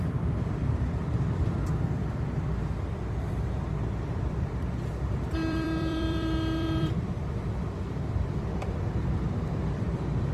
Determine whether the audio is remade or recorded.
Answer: remade